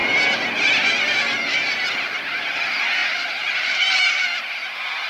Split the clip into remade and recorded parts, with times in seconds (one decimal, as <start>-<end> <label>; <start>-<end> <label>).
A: 0.0-3.0 recorded; 3.0-3.9 remade; 3.9-5.1 recorded